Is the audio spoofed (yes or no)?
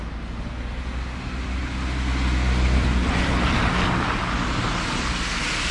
no